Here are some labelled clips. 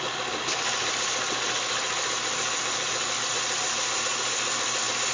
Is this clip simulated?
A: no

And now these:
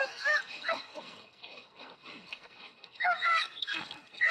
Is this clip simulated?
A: yes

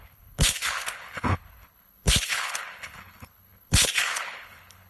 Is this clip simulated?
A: yes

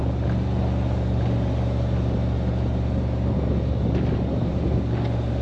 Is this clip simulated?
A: no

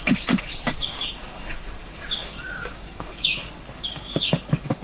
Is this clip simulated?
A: yes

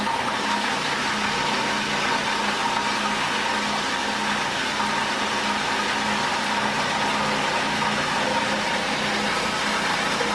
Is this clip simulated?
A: no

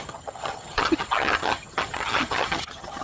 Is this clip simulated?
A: yes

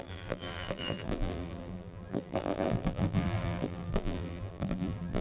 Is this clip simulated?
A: yes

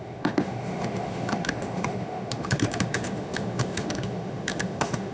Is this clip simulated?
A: yes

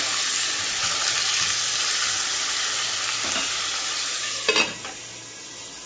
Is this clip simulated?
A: no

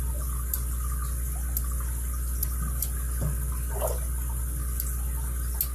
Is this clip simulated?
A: no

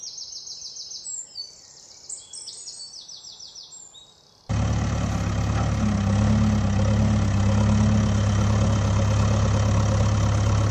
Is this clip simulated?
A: no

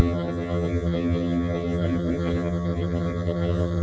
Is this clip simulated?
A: yes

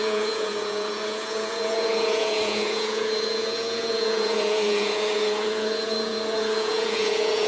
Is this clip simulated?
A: yes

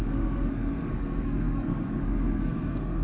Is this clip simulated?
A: yes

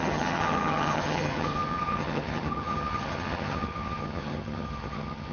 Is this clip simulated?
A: yes